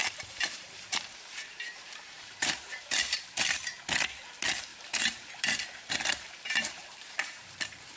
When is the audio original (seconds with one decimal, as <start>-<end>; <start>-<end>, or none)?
3.7-4.7; 7.6-8.0